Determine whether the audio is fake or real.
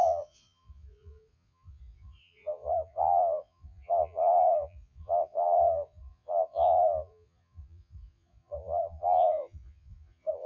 fake